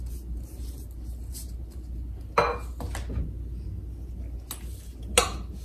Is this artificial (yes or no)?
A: no